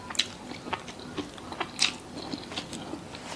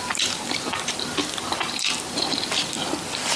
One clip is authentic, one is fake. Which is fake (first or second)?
second